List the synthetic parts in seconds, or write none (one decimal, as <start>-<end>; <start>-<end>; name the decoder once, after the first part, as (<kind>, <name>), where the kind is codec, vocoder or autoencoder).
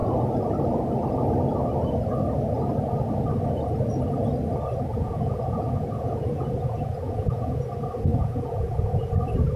4.9-7.6 (vocoder, Vocos); 8.1-9.1